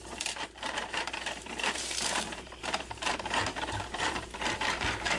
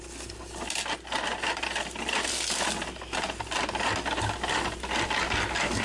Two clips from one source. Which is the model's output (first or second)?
first